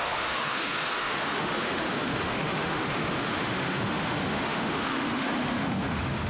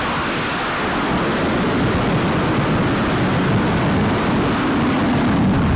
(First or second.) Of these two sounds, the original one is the second